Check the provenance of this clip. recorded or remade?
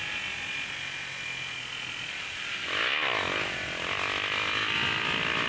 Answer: recorded